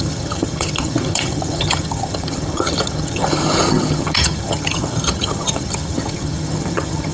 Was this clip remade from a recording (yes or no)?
yes